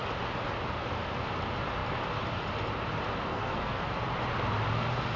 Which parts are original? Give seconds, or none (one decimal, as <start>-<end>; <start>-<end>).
0.0-3.3; 3.9-5.2